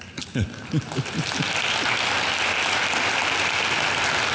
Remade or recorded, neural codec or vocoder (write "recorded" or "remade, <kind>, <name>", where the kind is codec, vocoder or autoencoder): recorded